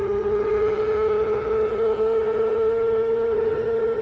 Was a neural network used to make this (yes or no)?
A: yes